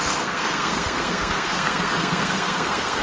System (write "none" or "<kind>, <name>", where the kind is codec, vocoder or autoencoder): codec, SNAC